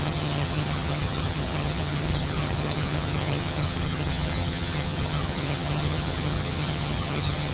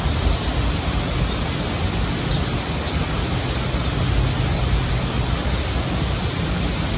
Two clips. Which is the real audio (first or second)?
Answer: second